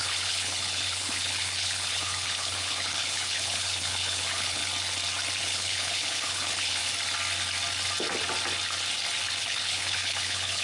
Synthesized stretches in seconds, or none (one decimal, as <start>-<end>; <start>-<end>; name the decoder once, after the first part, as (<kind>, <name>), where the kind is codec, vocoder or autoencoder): 0.0-4.6 (codec, HILCodec); 5.4-6.8; 9.4-10.6